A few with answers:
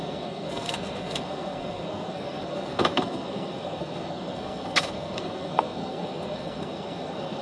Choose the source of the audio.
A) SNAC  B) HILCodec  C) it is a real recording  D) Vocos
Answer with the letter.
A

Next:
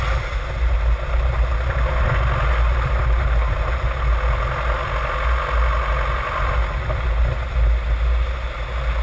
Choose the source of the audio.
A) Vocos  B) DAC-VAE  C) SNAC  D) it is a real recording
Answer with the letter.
D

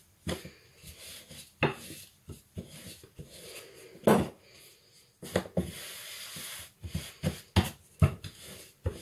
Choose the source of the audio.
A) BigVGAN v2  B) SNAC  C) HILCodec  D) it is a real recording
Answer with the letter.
D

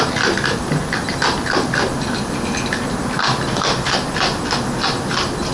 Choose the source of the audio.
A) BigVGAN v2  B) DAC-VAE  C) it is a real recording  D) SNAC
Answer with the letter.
C